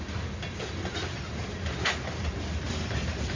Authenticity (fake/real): real